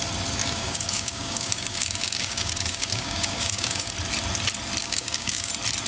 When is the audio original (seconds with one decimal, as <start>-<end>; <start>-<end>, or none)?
0.0-0.4; 3.9-4.8; 5.5-5.9